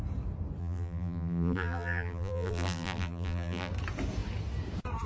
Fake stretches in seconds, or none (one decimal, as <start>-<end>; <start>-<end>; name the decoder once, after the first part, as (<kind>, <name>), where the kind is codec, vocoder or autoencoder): 0.6-3.7 (vocoder, BigVGAN v2)